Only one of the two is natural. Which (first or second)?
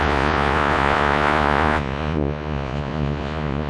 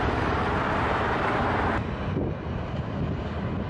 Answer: second